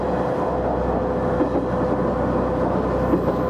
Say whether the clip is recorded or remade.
recorded